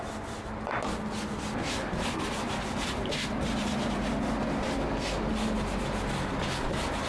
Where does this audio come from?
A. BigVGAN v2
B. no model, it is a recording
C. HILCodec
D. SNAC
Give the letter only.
B